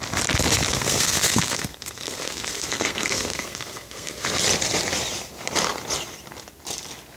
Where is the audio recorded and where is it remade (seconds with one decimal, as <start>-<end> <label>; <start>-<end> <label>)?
0.0-0.7 recorded; 0.7-4.2 remade; 4.2-7.2 recorded